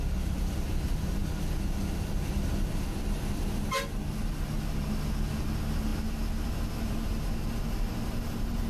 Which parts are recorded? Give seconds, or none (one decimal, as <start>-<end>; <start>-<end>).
0.0-8.7